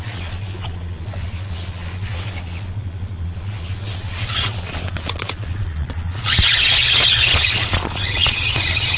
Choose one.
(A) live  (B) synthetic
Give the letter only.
B